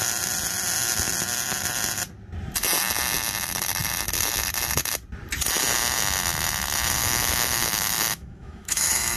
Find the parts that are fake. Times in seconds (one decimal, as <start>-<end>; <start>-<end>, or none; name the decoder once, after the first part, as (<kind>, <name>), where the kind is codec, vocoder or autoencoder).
7.0-9.2 (autoencoder, DAC-VAE)